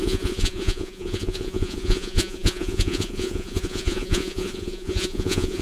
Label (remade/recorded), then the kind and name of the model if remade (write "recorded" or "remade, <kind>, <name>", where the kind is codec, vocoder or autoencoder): remade, vocoder, Vocos